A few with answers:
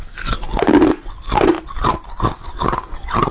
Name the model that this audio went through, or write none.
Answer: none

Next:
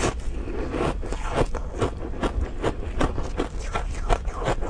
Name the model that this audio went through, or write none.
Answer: none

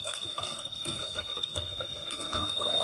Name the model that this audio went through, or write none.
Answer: codec, SNAC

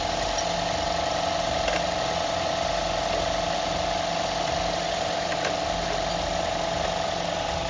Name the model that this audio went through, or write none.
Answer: none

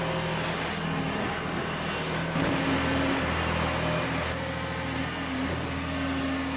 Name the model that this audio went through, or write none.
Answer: none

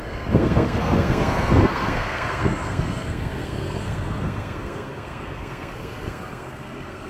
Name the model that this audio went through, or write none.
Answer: codec, SNAC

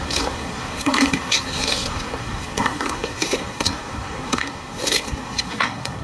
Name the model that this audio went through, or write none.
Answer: codec, SNAC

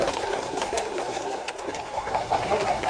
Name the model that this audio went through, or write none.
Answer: codec, SNAC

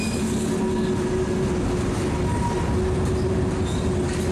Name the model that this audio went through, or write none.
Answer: none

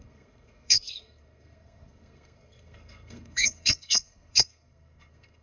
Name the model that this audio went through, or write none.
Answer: codec, SNAC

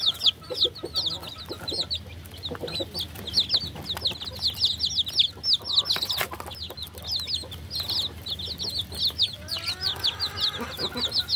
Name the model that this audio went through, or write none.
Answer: none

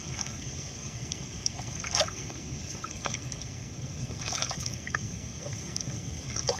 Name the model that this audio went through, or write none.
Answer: codec, SNAC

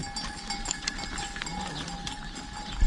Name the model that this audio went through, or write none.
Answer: none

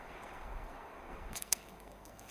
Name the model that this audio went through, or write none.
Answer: codec, SNAC